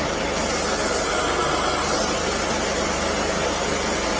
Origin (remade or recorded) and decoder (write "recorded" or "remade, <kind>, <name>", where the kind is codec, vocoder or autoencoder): recorded